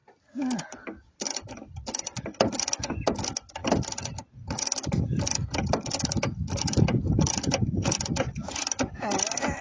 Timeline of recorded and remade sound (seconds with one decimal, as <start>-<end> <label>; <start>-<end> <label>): 0.0-9.6 recorded